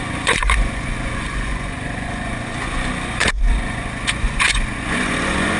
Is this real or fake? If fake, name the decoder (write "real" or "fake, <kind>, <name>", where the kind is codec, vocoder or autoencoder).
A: fake, vocoder, Vocos